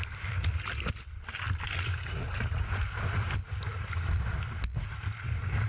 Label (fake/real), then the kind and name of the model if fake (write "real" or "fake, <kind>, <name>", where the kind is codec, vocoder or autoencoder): real